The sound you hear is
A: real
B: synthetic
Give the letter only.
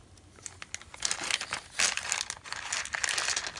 A